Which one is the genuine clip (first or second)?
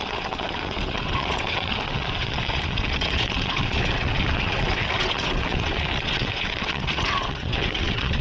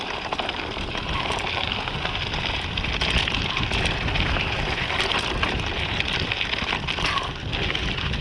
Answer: second